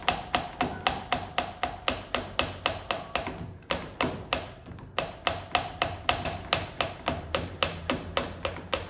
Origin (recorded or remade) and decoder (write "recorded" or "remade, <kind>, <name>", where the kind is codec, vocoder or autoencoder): recorded